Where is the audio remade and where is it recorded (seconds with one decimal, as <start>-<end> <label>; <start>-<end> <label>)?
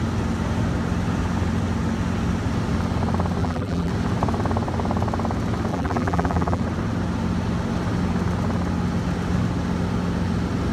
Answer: 0.0-3.4 recorded; 3.4-3.9 remade; 3.9-5.7 recorded; 5.7-6.6 remade; 6.6-10.7 recorded